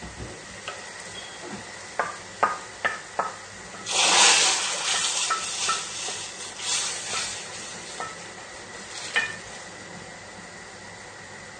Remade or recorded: recorded